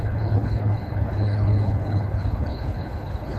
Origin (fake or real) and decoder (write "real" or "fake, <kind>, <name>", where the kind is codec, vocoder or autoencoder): fake, codec, HILCodec